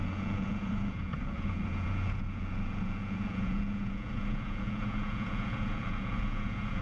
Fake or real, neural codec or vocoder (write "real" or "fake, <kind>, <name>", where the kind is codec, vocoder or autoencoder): fake, vocoder, Vocos